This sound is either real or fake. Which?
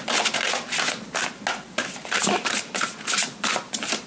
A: real